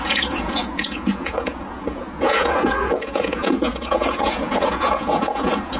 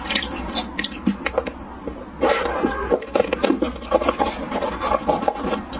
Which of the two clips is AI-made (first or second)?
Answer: first